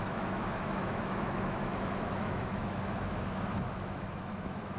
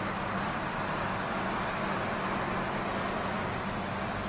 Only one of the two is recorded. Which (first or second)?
second